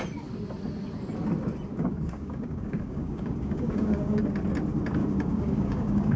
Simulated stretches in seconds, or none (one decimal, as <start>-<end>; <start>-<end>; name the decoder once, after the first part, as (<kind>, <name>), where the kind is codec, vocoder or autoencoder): 1.7-4.2 (codec, DAC); 5.0-6.2